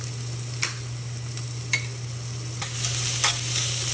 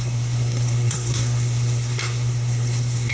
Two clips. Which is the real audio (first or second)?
first